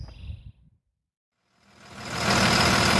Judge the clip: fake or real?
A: real